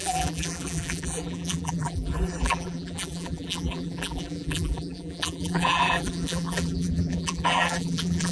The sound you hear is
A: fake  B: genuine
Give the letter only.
A